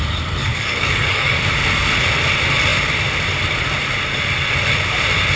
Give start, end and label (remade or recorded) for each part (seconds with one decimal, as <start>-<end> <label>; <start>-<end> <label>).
0.0-0.4 recorded; 0.4-1.4 remade; 1.4-5.4 recorded